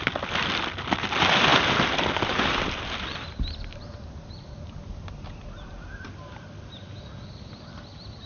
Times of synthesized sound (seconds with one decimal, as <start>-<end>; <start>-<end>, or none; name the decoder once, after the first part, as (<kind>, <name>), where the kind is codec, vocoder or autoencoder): 4.8-5.5 (vocoder, BigVGAN v2)